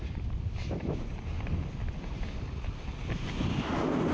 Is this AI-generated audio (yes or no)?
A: no